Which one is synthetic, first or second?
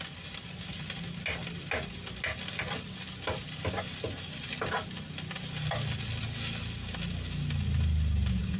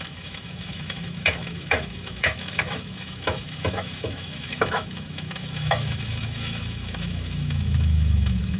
second